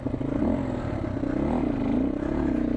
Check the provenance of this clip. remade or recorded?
recorded